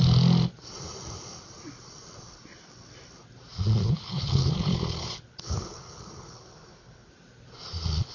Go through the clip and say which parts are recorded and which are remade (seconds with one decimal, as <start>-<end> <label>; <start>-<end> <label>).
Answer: 0.0-3.8 recorded; 3.8-7.1 remade; 7.1-8.1 recorded